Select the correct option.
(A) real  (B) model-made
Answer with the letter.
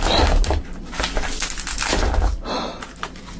A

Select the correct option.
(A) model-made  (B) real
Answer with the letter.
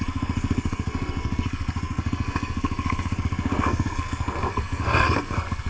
A